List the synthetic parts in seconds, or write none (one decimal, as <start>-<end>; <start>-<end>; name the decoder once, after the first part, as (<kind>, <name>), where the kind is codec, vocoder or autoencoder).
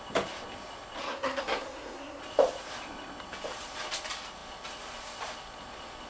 1.0-2.2 (codec, SNAC)